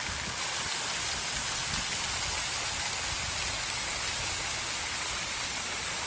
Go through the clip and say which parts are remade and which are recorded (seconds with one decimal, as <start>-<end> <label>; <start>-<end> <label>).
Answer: 0.0-6.1 recorded